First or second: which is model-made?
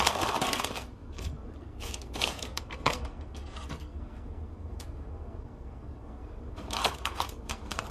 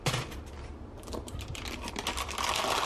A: first